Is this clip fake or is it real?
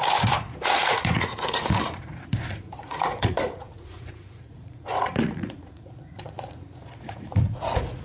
fake